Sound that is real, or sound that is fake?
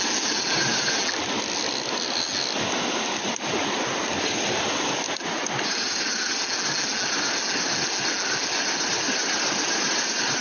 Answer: real